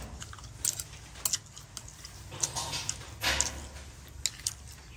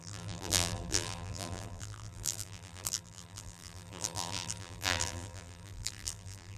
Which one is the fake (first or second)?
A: second